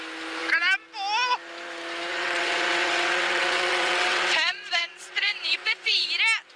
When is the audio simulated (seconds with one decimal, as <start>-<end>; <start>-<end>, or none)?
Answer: 2.1-6.1